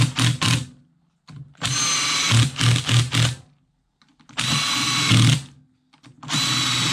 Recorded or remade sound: recorded